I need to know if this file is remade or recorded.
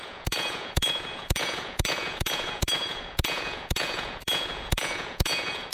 remade